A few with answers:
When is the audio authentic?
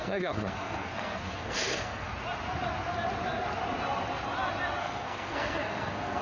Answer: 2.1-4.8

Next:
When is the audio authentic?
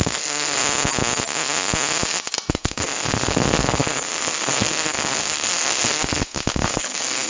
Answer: 0.6-2.5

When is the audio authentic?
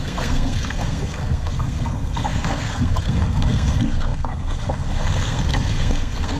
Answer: none